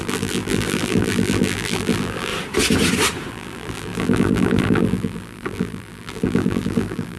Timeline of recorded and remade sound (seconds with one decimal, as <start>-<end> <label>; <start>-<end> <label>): 0.0-2.3 remade; 2.3-3.3 recorded; 3.3-7.2 remade